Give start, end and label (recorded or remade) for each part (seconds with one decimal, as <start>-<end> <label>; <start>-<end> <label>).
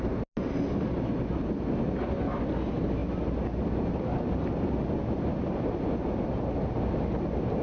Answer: 0.0-7.6 recorded